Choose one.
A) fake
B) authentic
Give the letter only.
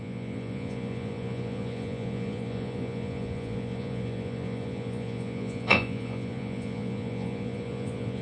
A